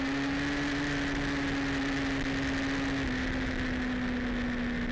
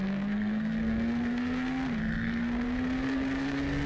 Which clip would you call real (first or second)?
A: first